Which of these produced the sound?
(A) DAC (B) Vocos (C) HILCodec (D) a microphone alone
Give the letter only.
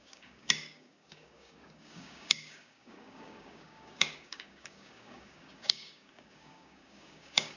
A